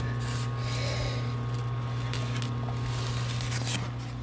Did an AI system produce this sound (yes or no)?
no